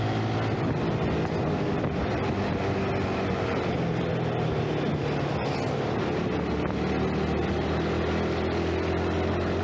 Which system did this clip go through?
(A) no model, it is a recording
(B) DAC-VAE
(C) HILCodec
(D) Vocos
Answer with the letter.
A